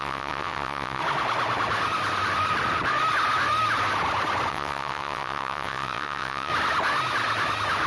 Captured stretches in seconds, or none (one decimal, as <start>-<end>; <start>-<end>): 1.0-4.5; 6.5-7.9